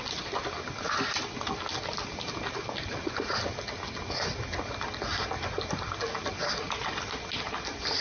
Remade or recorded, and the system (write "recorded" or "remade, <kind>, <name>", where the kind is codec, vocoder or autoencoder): recorded